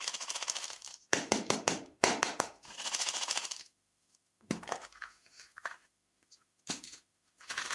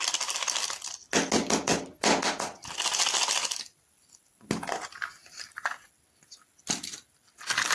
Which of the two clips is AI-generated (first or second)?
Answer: first